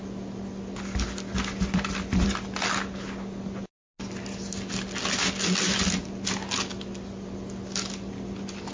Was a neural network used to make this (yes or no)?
no